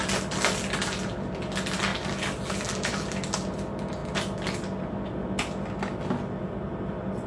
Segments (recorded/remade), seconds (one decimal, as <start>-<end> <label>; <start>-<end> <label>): 0.0-7.3 recorded